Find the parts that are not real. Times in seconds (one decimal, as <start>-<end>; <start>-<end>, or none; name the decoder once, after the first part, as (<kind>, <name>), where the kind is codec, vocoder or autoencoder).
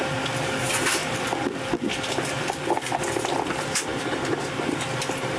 none